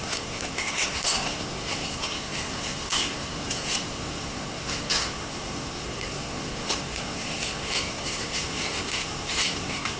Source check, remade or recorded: remade